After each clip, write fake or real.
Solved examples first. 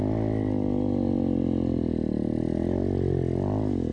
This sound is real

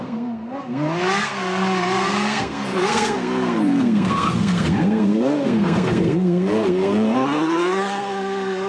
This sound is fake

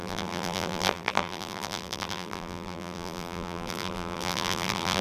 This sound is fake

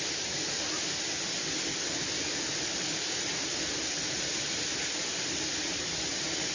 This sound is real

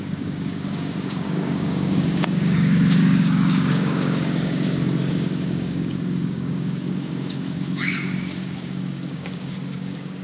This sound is fake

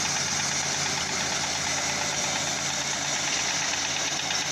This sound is real